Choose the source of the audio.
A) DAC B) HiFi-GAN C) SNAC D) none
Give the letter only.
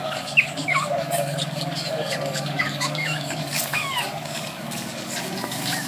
A